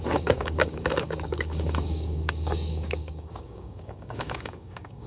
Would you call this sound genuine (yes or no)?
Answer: no